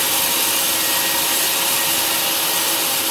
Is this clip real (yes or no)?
yes